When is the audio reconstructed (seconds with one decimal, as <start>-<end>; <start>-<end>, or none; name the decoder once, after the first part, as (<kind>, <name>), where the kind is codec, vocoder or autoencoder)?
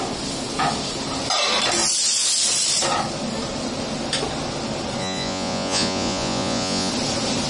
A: 5.0-6.9 (vocoder, Vocos)